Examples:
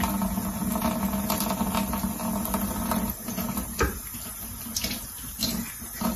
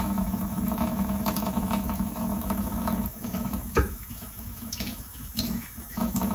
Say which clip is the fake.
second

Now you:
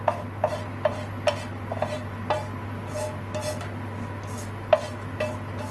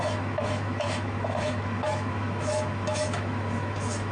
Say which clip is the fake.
second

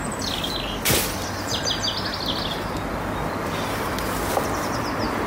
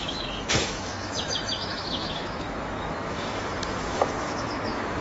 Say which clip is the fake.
second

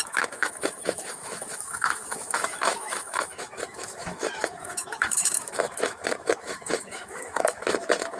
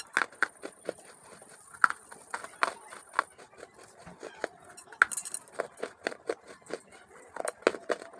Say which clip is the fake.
first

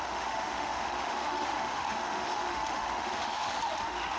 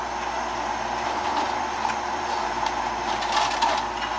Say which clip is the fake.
first